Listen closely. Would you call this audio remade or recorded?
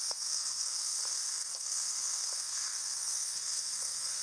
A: remade